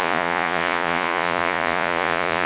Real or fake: fake